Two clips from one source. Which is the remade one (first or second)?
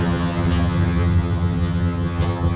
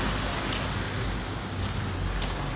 first